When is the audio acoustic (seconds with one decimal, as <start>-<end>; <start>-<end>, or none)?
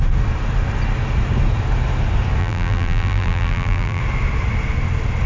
0.0-2.4; 4.0-5.3